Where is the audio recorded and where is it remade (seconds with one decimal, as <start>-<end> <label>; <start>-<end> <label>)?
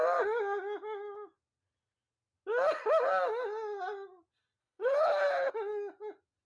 0.0-4.6 recorded; 4.6-5.5 remade; 5.5-6.5 recorded